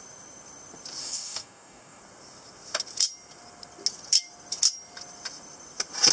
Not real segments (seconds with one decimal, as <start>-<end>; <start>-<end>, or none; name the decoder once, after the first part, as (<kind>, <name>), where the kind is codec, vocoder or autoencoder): 1.0-2.0 (codec, DAC)